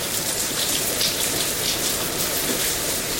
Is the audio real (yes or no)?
no